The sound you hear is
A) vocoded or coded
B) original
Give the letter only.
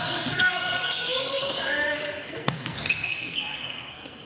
A